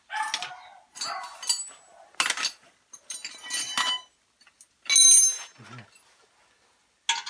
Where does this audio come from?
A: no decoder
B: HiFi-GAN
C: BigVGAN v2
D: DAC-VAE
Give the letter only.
A